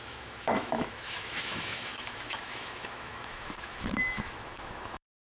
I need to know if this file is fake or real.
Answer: fake